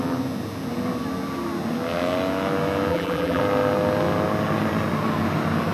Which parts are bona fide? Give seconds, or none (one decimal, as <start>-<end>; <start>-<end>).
0.0-2.9; 3.4-5.7